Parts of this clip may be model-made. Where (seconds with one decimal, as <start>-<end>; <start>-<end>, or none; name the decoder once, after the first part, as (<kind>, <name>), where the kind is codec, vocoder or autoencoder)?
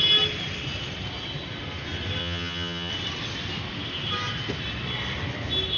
2.2-2.9 (vocoder, HiFi-GAN)